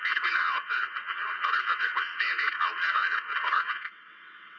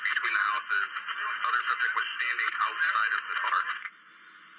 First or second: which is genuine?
second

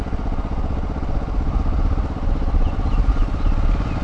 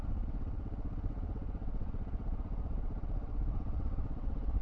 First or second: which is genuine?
first